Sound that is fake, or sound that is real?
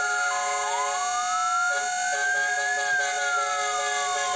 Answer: real